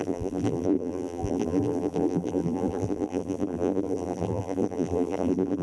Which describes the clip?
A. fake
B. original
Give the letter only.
A